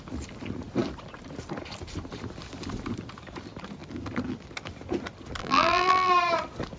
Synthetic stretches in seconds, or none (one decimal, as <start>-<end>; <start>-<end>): 5.4-6.1